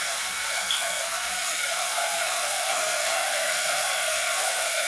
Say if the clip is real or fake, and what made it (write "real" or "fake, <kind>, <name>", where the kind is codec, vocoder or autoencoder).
fake, codec, SNAC